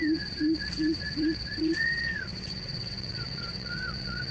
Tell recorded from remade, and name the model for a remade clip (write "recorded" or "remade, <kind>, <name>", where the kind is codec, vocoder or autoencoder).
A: remade, vocoder, WaveNeXt